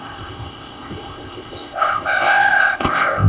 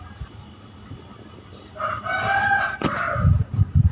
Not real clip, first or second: first